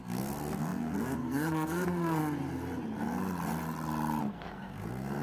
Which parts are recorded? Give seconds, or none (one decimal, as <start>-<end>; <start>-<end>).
2.2-4.2